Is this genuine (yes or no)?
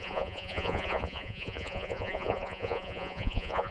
no